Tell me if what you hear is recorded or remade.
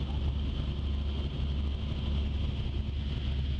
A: recorded